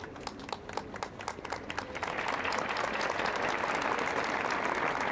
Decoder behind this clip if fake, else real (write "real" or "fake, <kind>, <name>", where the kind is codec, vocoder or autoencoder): real